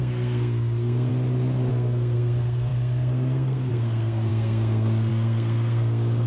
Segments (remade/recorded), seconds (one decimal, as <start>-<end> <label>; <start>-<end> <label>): 0.0-1.1 remade; 1.1-1.7 recorded; 1.7-6.3 remade